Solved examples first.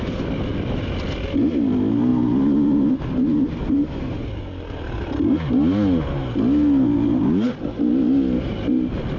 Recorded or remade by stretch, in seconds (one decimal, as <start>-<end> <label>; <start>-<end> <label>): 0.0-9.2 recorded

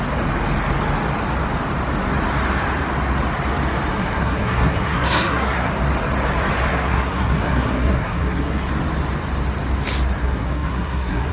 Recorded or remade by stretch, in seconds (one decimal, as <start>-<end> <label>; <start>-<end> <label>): 0.0-3.9 recorded; 3.9-5.7 remade; 5.7-6.7 recorded; 6.7-8.7 remade; 8.7-10.2 recorded; 10.2-11.3 remade

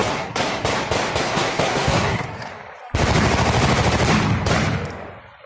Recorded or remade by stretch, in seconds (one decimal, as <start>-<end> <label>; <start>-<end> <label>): 0.0-0.6 remade; 0.6-1.2 recorded; 1.2-2.5 remade; 2.5-5.5 recorded